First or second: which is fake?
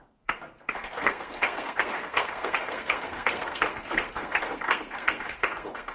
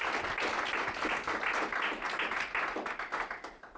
first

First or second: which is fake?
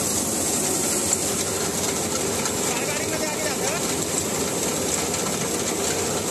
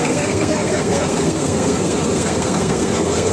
second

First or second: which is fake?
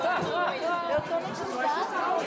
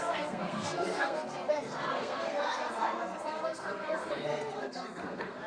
second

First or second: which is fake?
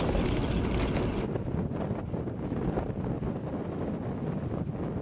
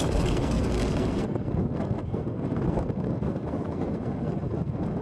second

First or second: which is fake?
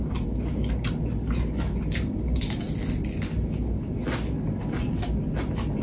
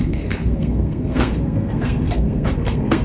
second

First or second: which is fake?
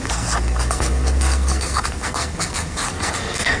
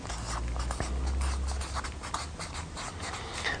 first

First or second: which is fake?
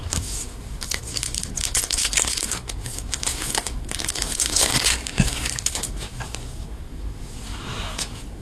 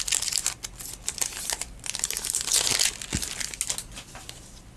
first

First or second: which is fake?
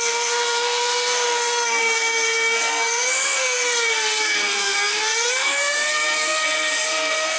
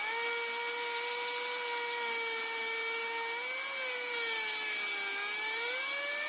first